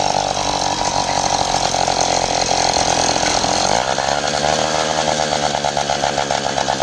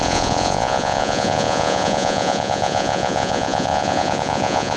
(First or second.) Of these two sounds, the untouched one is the first